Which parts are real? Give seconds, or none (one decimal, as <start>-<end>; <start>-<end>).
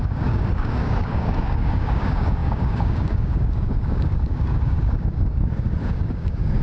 none